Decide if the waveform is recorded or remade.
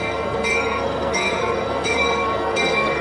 remade